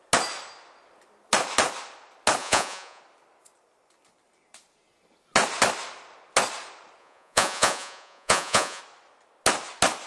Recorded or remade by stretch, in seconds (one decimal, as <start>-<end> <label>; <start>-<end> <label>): 0.0-2.4 recorded; 2.4-3.0 remade; 3.0-7.0 recorded; 7.0-8.8 remade; 8.8-10.1 recorded